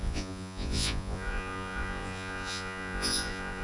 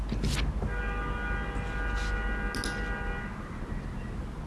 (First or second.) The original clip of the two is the second